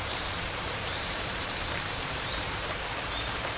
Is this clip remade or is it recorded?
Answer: remade